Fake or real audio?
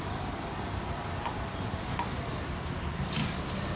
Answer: fake